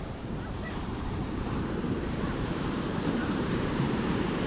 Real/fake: fake